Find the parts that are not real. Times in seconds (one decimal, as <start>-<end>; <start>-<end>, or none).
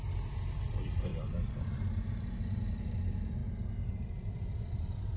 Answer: 0.0-3.4; 4.2-5.2